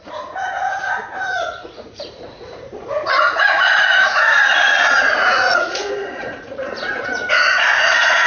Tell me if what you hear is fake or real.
fake